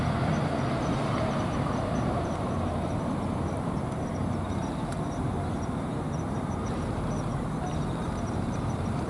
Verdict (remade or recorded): remade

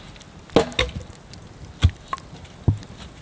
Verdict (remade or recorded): recorded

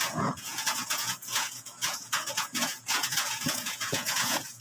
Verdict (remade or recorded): remade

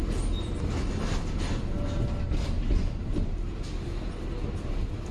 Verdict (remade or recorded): recorded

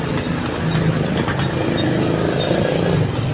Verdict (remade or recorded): recorded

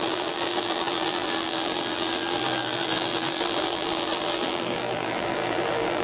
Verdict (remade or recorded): remade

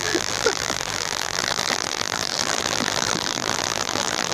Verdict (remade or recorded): remade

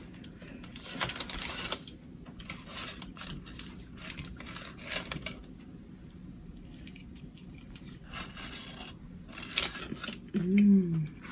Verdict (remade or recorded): recorded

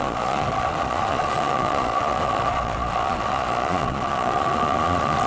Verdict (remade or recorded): remade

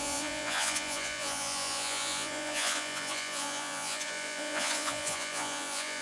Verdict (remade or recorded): remade